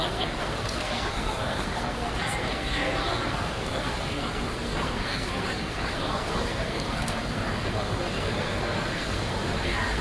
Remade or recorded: remade